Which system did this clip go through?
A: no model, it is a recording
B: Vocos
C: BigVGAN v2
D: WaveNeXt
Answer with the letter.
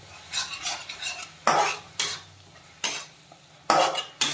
A